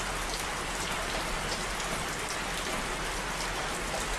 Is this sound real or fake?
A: real